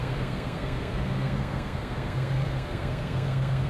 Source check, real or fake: fake